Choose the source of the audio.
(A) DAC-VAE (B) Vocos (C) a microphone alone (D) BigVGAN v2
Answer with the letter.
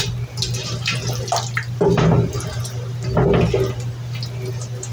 C